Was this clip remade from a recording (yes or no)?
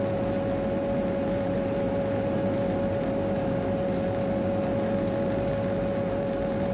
no